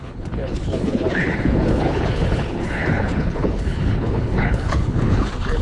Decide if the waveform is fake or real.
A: fake